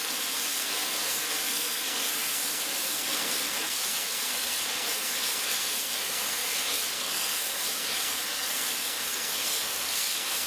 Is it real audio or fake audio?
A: fake